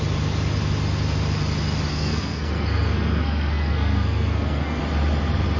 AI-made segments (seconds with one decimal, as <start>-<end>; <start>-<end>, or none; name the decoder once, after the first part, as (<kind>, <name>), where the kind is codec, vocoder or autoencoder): 1.9-4.8 (codec, SNAC)